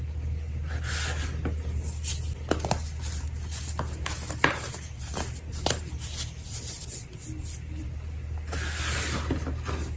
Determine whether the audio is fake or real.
real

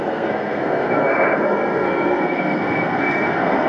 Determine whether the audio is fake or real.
fake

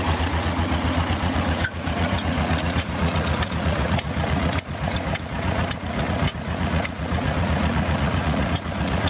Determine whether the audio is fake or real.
fake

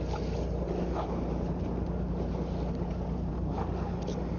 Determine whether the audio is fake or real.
real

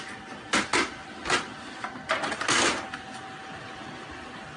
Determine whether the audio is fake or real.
real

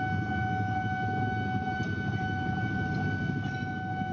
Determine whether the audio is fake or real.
real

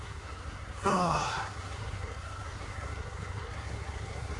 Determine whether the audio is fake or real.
fake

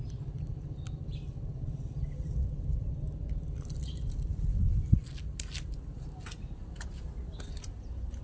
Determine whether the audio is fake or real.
real